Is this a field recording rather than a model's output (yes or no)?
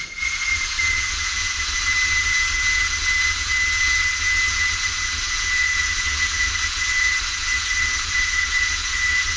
no